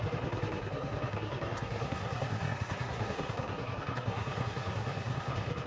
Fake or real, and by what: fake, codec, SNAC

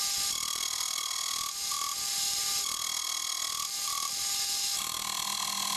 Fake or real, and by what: real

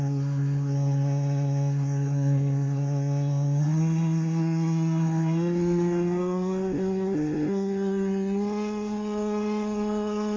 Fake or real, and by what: fake, codec, SNAC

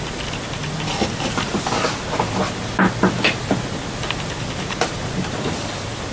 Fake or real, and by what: real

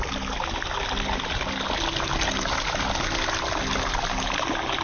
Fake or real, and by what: real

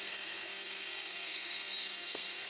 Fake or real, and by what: fake, codec, SNAC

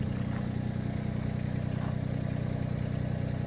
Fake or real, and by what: real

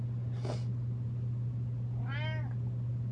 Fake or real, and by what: real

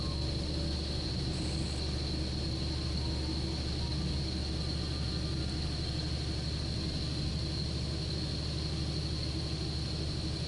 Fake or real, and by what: real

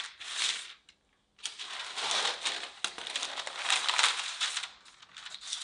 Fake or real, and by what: real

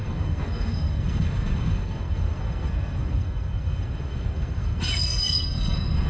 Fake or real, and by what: fake, codec, SNAC